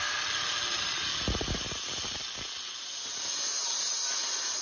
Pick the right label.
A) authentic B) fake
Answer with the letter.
A